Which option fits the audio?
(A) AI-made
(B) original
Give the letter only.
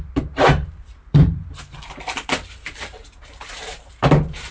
A